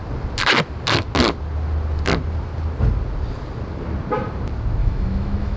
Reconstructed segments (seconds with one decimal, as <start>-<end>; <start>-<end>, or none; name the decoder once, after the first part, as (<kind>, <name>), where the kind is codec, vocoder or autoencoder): 4.8-5.6 (autoencoder, DAC-VAE)